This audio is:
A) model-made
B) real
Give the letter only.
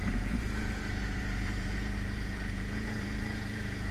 A